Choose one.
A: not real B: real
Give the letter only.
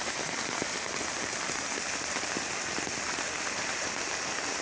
B